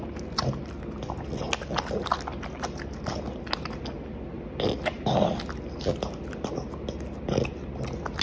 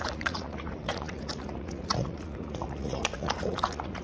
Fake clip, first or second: second